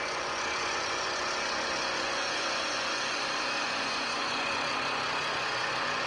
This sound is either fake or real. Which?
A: fake